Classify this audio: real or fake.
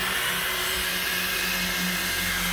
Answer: real